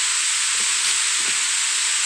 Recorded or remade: recorded